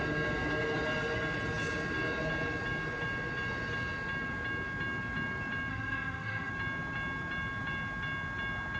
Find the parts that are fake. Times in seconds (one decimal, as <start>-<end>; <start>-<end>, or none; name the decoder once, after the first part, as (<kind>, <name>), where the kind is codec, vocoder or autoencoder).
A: 5.7-6.5 (autoencoder, DAC-VAE)